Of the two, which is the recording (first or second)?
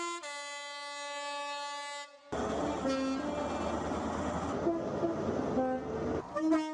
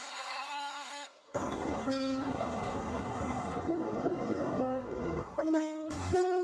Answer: first